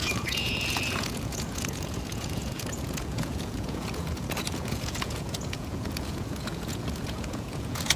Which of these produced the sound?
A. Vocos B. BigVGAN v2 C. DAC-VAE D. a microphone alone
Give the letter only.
A